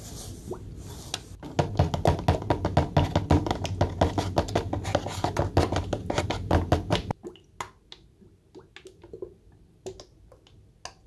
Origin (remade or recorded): recorded